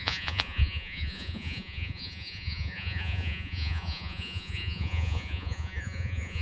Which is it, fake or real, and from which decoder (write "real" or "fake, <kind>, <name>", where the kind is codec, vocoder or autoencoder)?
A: fake, vocoder, Vocos